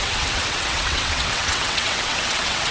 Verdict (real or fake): fake